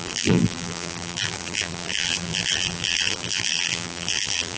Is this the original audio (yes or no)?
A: no